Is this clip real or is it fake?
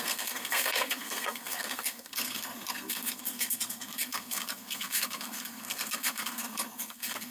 fake